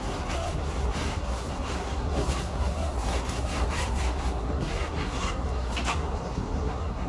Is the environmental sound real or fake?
fake